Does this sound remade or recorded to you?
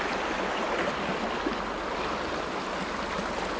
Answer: recorded